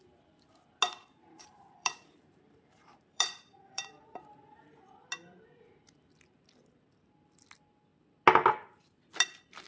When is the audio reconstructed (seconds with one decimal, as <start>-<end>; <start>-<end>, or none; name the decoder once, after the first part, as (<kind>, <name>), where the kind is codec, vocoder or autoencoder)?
1.2-4.9 (vocoder, BigVGAN v2)